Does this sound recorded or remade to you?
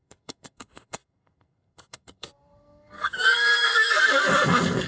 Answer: remade